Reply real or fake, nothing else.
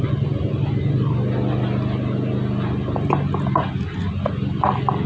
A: real